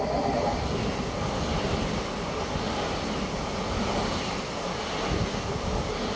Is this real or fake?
real